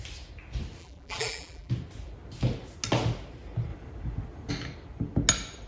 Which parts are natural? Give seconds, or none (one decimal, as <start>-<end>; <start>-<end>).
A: 0.0-0.8; 1.7-5.7